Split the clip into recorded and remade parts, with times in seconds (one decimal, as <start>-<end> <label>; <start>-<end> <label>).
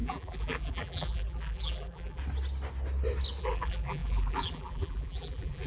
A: 0.0-2.2 remade; 2.2-3.4 recorded; 3.4-5.7 remade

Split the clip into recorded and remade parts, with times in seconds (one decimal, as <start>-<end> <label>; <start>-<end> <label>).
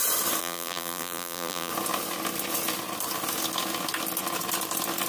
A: 0.0-0.4 recorded; 0.4-1.7 remade; 1.7-5.1 recorded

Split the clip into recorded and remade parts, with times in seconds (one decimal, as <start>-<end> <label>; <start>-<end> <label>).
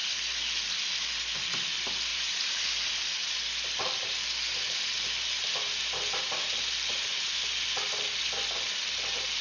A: 0.0-2.1 recorded; 2.1-2.9 remade; 2.9-7.1 recorded; 7.1-8.2 remade; 8.2-9.4 recorded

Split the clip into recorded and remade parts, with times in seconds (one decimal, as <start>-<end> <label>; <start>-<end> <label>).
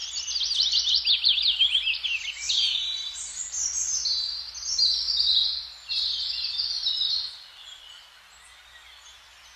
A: 0.0-2.2 remade; 2.2-9.6 recorded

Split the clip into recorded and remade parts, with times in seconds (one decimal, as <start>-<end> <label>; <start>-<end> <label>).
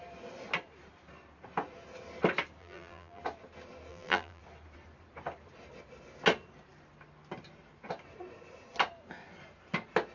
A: 0.0-2.6 recorded; 2.6-3.2 remade; 3.2-3.9 recorded; 3.9-4.4 remade; 4.4-10.1 recorded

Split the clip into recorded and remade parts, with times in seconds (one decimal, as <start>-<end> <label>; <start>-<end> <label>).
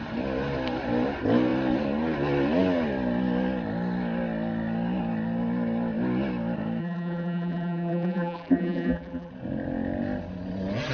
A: 0.0-6.8 recorded; 6.8-9.3 remade; 9.3-10.9 recorded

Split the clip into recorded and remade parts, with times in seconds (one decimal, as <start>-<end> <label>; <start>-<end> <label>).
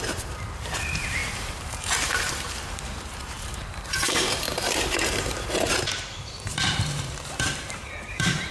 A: 0.0-8.5 remade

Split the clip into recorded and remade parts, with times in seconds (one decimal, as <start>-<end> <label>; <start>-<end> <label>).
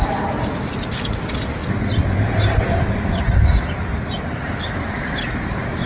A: 0.0-1.6 recorded; 1.6-3.2 remade; 3.2-3.9 recorded; 3.9-5.9 remade